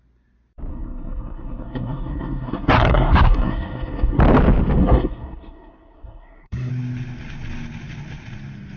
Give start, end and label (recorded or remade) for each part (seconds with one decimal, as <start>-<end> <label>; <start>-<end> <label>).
0.0-0.7 recorded; 0.7-4.2 remade; 4.2-4.8 recorded; 4.8-6.7 remade; 6.7-8.8 recorded